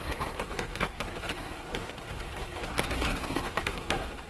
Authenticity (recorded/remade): remade